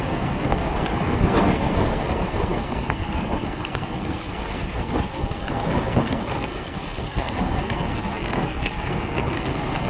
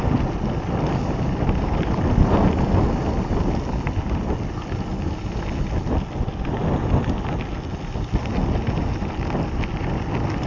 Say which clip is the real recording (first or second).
second